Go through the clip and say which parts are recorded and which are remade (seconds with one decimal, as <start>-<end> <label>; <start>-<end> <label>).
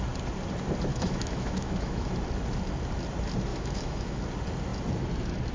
0.0-0.9 recorded; 0.9-2.1 remade; 2.1-3.5 recorded; 3.5-4.2 remade; 4.2-5.5 recorded